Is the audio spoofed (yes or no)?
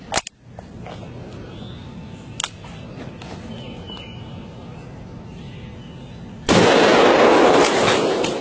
no